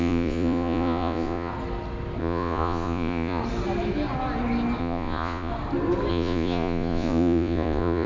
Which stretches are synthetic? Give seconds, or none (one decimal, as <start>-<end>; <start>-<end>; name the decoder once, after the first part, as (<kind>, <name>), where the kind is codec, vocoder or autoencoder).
0.0-1.5 (vocoder, Vocos); 2.2-3.4; 4.8-5.5; 6.1-8.1